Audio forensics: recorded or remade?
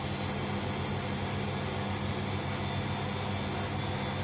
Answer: recorded